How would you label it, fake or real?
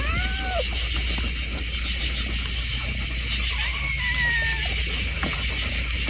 real